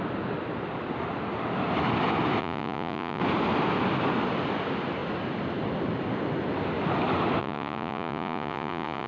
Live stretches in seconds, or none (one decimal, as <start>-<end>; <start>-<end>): 0.0-2.4; 3.2-7.4